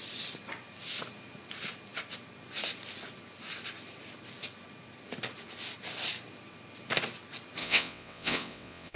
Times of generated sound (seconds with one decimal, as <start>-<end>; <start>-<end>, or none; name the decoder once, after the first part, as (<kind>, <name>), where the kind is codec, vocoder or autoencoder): 7.6-9.0 (vocoder, WaveNeXt)